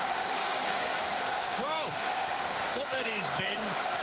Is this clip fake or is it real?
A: fake